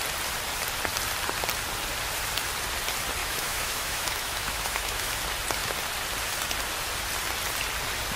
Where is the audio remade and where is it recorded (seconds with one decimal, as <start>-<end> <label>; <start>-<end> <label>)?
0.0-3.2 recorded; 3.2-5.1 remade; 5.1-8.2 recorded